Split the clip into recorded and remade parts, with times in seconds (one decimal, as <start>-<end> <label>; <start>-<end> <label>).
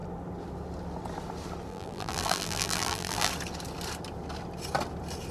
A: 0.0-1.7 recorded; 1.7-3.3 remade; 3.3-5.3 recorded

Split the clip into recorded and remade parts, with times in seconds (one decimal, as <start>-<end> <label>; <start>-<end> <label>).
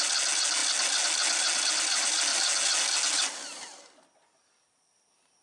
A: 0.0-5.4 recorded